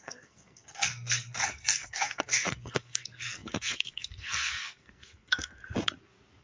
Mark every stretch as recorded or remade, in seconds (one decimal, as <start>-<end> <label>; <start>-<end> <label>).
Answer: 0.0-5.6 remade; 5.6-6.4 recorded